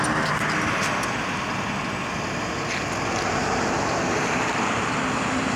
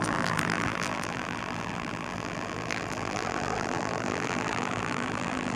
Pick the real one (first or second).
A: first